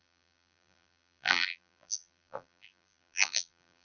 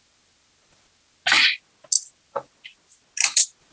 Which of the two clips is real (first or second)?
second